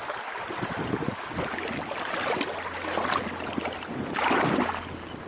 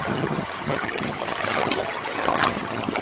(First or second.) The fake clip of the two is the second